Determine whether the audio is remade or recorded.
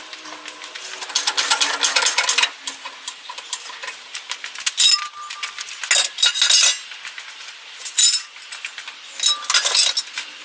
recorded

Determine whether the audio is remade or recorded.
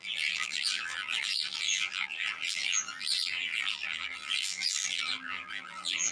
remade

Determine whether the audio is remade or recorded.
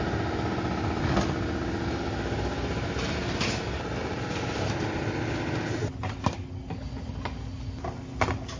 recorded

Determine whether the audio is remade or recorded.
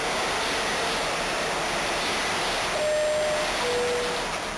recorded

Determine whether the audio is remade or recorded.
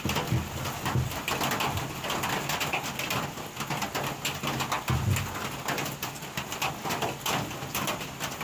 recorded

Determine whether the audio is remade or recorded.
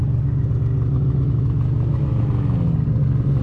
recorded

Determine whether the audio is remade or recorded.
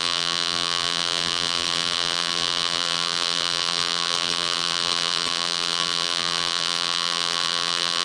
remade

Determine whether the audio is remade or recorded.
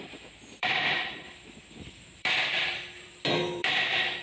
remade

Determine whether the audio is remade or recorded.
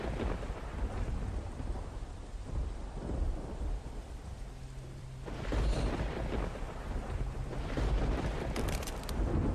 remade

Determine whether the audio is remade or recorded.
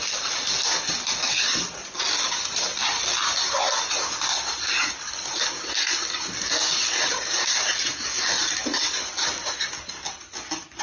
recorded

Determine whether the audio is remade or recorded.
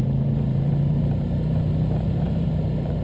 remade